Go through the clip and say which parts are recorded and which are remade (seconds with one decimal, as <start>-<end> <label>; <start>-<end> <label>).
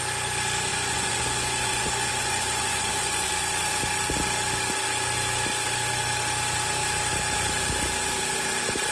0.0-0.7 recorded; 0.7-3.3 remade; 3.3-8.9 recorded